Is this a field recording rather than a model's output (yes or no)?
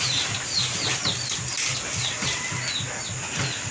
yes